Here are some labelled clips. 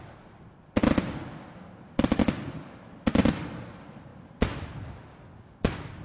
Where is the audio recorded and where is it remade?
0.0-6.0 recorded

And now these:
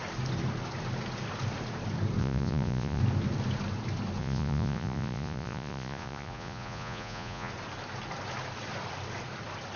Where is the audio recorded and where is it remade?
0.0-2.2 recorded; 2.2-3.0 remade; 3.0-4.2 recorded; 4.2-7.5 remade; 7.5-9.8 recorded

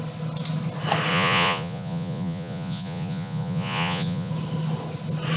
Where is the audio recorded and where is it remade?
0.0-1.1 recorded; 1.1-4.3 remade; 4.3-5.4 recorded

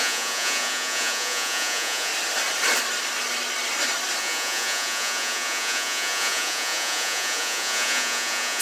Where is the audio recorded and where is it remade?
0.0-2.1 remade; 2.1-4.2 recorded; 4.2-8.6 remade

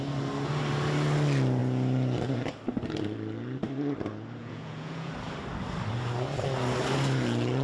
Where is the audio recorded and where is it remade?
0.0-4.4 recorded; 4.4-5.1 remade; 5.1-7.6 recorded

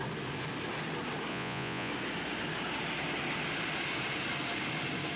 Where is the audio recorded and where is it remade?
0.0-1.3 recorded; 1.3-1.9 remade; 1.9-5.2 recorded

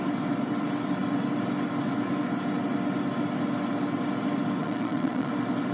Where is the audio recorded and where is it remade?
0.0-4.6 recorded; 4.6-5.3 remade; 5.3-5.7 recorded